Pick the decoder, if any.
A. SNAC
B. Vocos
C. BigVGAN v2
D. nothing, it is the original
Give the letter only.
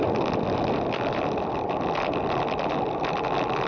D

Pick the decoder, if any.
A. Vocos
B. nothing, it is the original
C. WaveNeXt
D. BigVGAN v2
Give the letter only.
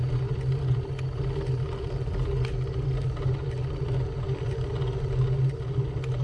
B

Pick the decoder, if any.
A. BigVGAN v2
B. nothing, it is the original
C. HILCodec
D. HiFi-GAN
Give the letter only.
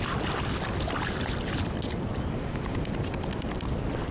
B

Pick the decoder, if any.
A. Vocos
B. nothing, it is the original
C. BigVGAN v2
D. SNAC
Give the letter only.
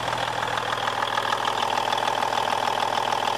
B